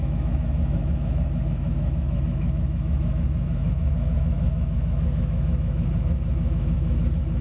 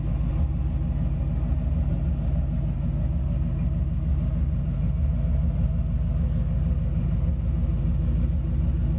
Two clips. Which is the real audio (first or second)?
second